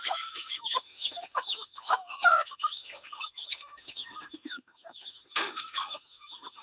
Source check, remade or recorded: remade